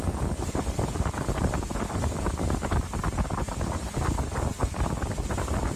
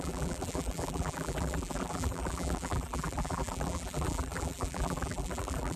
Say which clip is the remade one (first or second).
second